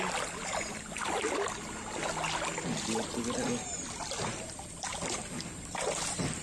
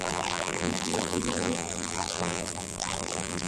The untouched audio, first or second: first